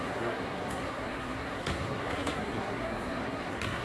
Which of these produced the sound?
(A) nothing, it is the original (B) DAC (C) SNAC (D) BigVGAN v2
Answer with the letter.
C